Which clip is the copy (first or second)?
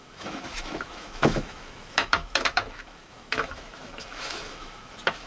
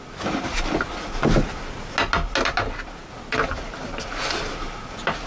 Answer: first